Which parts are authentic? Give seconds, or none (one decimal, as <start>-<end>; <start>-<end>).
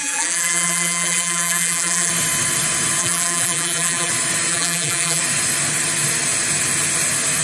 2.1-3.0; 4.1-4.5; 5.2-7.4